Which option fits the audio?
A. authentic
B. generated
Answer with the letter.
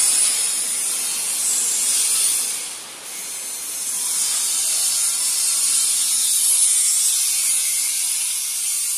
B